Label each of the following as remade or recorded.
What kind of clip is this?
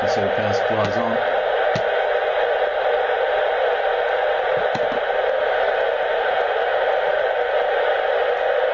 recorded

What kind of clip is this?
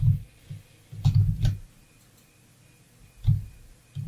recorded